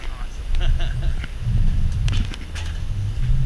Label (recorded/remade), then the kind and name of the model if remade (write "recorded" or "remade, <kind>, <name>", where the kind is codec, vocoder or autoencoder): recorded